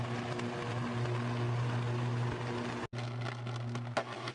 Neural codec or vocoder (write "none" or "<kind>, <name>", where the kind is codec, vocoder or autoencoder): none